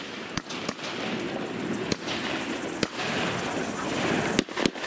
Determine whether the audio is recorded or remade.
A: recorded